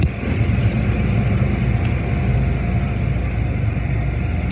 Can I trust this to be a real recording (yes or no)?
yes